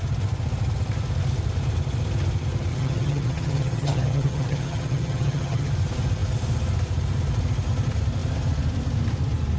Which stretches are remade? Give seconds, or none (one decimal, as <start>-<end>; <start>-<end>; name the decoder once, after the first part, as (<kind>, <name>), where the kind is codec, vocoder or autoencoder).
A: 2.7-5.7 (vocoder, HiFi-GAN)